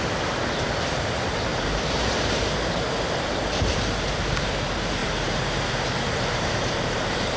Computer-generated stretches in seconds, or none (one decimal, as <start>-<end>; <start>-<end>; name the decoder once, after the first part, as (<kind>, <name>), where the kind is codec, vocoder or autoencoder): 1.5-2.4 (vocoder, BigVGAN v2); 5.0-7.4